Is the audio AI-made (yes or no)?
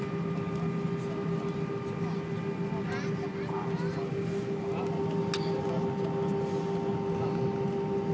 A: no